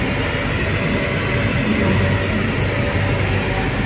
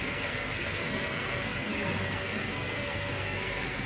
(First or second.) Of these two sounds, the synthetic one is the second